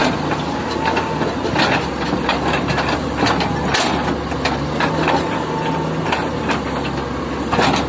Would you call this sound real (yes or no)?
yes